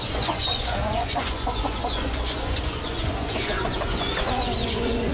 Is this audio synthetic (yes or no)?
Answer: yes